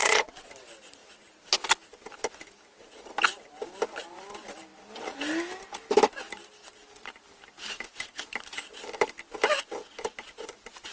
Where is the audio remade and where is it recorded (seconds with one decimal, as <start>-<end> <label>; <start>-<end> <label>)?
0.0-0.5 remade; 0.5-10.9 recorded